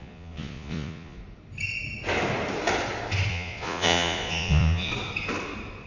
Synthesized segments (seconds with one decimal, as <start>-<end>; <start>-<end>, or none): 0.0-1.2; 3.3-4.9